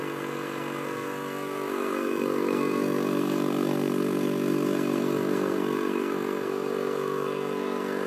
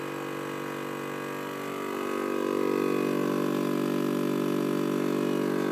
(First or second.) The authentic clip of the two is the second